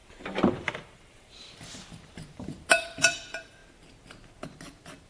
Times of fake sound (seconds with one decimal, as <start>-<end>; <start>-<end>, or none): 0.0-3.6